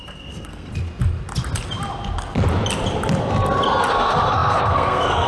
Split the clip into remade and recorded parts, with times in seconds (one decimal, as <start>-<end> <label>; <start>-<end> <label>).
0.0-0.7 remade; 0.7-3.9 recorded; 3.9-5.3 remade